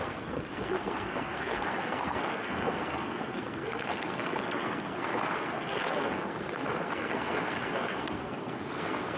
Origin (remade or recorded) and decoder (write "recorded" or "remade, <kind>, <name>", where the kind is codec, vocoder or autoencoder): remade, codec, SNAC